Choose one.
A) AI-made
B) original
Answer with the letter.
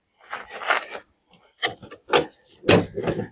B